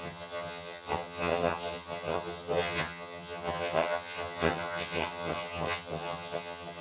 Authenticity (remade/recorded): remade